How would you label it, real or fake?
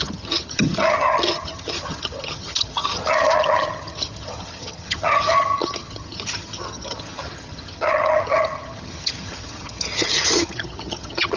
fake